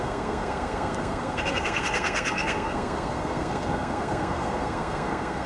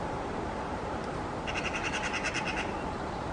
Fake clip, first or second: first